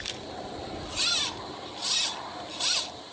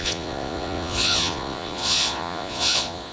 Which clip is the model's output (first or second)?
second